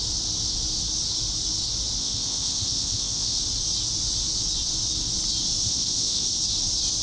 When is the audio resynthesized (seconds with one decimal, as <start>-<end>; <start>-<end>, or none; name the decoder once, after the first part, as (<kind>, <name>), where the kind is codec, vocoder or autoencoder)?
2.0-3.4 (codec, ZipCodec); 5.6-6.4